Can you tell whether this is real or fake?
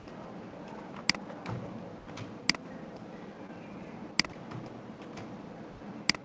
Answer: real